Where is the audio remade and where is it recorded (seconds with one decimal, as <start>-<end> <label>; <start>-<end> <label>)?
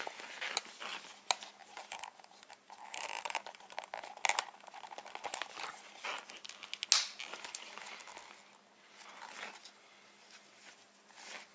0.0-1.6 recorded; 1.6-3.9 remade; 3.9-11.5 recorded